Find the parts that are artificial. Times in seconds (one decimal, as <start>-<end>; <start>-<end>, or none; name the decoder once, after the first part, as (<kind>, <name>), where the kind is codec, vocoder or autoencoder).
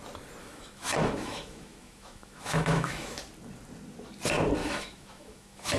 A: 0.4-3.2 (autoencoder, DAC-VAE); 4.6-5.8